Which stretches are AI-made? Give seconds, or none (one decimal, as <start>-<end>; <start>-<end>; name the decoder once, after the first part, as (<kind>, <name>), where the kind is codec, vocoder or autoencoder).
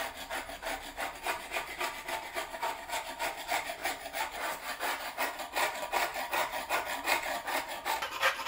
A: 0.0-3.8 (vocoder, BigVGAN v2); 4.5-8.5